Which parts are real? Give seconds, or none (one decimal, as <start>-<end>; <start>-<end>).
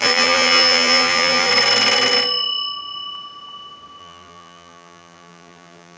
1.5-4.0